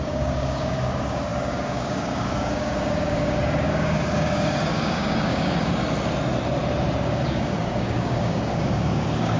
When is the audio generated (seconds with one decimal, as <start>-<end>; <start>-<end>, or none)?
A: 0.0-5.8; 7.0-9.4